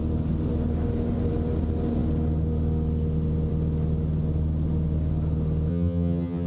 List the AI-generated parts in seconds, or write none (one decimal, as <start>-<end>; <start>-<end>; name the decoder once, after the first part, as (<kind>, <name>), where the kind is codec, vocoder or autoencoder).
5.7-6.5 (vocoder, HiFi-GAN)